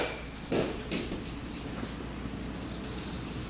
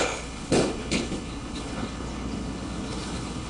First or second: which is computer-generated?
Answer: second